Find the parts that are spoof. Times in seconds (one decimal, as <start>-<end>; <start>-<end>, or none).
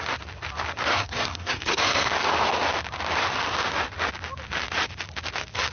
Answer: 0.8-2.1